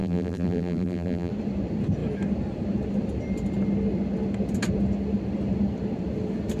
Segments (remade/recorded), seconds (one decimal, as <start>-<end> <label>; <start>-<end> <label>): 0.0-1.3 remade; 1.3-6.6 recorded